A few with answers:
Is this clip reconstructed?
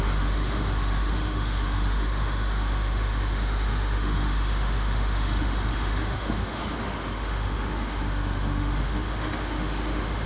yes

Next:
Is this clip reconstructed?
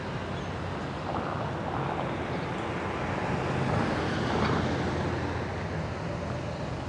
no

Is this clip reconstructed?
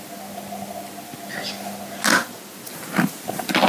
no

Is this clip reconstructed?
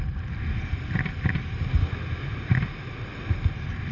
no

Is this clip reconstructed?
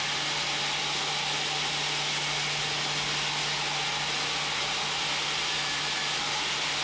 no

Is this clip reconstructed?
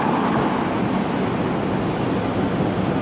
no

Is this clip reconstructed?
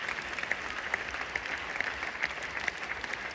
no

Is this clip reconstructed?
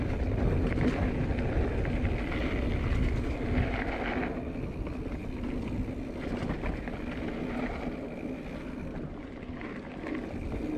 no